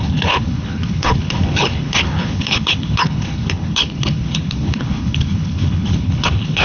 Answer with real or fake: fake